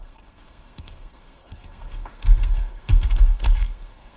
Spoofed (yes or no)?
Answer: yes